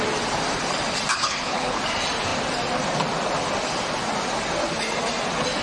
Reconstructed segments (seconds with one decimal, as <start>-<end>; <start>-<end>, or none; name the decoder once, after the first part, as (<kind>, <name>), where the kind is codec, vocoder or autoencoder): 1.1-1.8 (codec, HILCodec)